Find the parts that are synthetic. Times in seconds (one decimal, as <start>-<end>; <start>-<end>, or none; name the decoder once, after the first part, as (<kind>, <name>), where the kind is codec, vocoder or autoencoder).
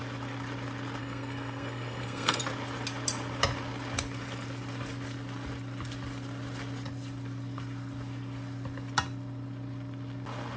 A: 1.0-2.4 (codec, SNAC)